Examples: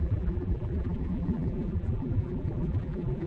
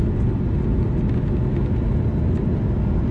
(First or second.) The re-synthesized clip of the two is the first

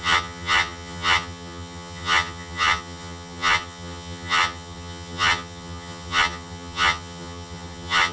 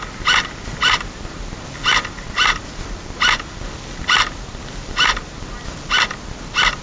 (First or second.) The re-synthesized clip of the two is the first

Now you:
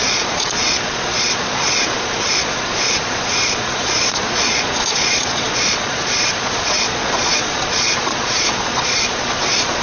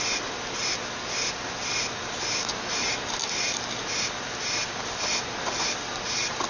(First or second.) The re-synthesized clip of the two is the first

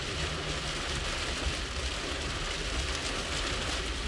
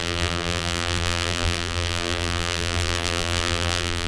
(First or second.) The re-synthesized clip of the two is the second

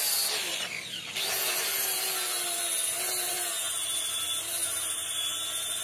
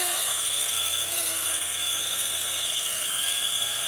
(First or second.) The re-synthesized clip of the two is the second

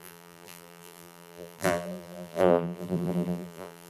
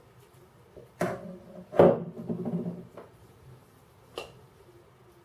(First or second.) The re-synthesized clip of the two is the first